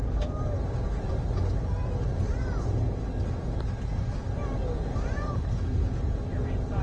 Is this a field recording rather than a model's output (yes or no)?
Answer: yes